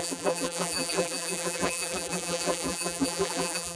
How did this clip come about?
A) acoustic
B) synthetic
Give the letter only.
B